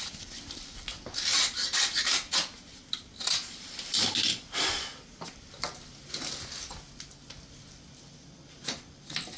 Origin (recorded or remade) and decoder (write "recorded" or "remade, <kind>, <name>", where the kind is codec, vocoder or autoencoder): recorded